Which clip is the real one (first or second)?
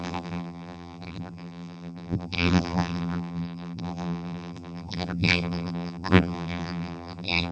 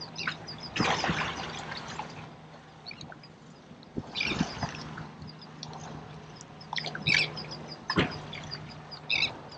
second